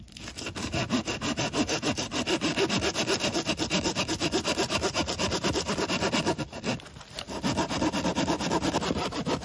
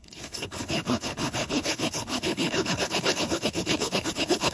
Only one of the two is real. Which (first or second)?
first